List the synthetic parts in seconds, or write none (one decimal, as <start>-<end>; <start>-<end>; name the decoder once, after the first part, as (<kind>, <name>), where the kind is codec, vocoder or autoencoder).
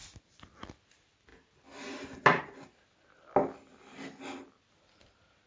none